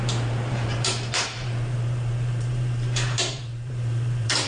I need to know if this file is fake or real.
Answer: fake